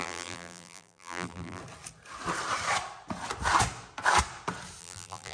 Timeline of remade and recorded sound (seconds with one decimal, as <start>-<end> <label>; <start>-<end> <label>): 0.0-1.6 remade; 1.6-4.8 recorded; 4.8-5.3 remade